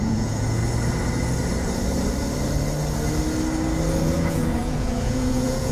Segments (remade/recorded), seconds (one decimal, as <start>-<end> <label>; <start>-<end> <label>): 0.0-0.6 remade; 0.6-4.0 recorded; 4.0-5.7 remade